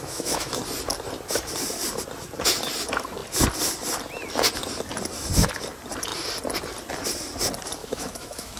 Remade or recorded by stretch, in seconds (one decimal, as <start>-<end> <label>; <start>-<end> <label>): 0.0-0.6 remade; 0.6-7.8 recorded; 7.8-8.6 remade